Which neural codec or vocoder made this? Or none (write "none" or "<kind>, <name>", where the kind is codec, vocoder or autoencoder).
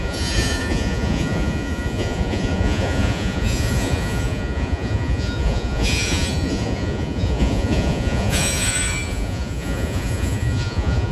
vocoder, Vocos